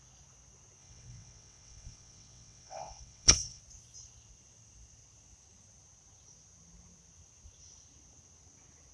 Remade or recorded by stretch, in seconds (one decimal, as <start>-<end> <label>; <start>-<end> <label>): 0.0-0.8 recorded; 0.8-3.6 remade; 3.6-8.9 recorded